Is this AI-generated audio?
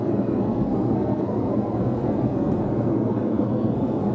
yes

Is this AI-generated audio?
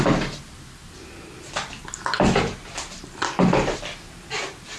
no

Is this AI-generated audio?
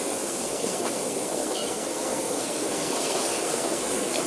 yes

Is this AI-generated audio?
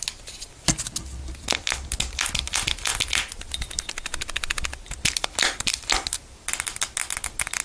no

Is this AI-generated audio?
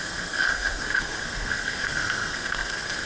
yes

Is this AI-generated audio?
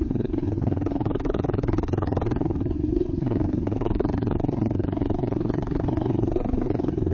yes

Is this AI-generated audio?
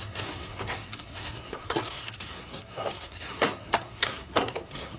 yes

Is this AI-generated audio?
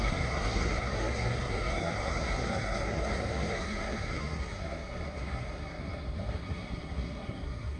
yes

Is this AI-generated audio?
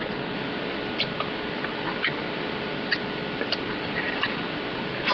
no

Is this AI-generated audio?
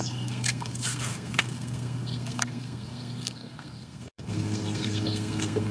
yes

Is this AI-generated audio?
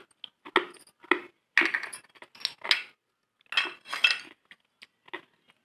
no